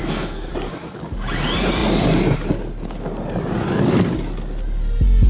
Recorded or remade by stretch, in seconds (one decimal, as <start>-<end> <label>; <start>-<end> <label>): 0.0-0.5 remade; 0.5-5.3 recorded